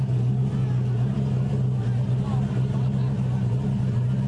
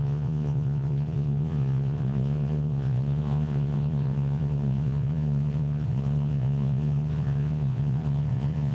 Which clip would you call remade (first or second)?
second